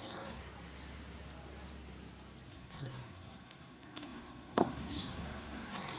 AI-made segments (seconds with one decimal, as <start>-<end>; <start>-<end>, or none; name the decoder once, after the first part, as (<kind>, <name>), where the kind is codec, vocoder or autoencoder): 0.0-0.4 (codec, SNAC); 2.5-6.0